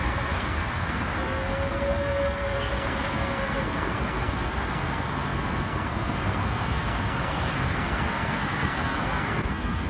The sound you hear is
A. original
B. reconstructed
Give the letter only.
B